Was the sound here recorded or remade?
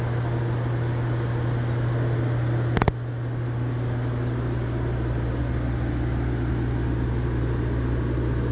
recorded